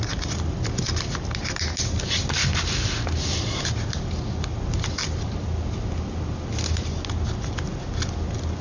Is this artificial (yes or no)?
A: no